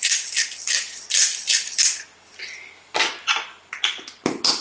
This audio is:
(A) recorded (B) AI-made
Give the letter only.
A